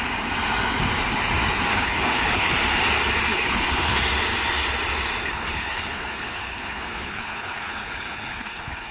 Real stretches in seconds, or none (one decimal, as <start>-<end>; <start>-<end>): 0.0-1.7; 2.5-3.3; 4.0-5.2